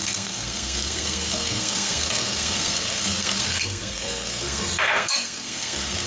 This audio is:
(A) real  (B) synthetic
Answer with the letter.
B